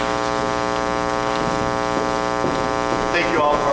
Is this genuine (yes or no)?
yes